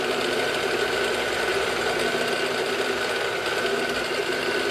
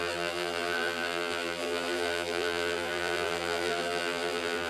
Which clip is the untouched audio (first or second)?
first